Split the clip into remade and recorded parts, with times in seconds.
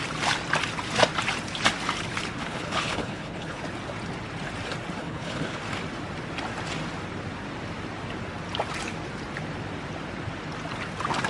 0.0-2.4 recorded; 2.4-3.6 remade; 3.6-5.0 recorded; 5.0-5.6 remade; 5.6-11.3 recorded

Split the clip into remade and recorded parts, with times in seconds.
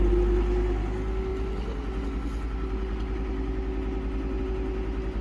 0.0-5.2 recorded